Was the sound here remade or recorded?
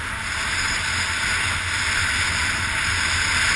recorded